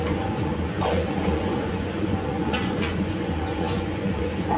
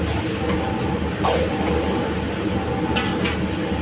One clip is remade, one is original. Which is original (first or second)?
second